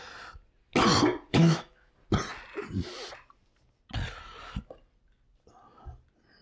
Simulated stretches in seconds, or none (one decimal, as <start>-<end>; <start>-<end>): 1.3-1.9